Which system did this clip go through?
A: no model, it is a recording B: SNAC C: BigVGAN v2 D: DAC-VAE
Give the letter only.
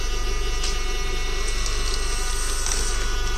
A